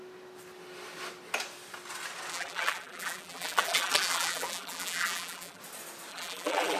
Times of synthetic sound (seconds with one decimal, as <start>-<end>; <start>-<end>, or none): 2.3-5.6; 6.1-6.8